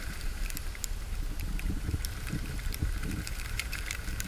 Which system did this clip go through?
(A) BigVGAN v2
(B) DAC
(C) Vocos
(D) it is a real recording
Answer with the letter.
A